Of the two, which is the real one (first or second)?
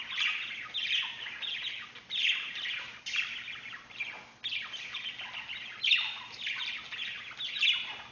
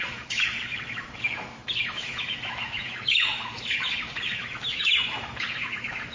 first